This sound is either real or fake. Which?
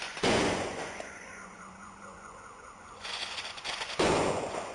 fake